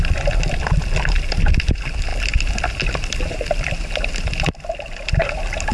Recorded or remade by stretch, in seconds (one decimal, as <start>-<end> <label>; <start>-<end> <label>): 0.0-5.7 recorded